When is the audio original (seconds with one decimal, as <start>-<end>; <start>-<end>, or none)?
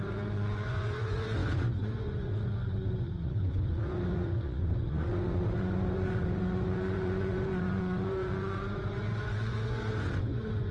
none